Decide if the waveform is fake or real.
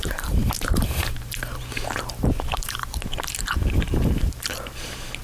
fake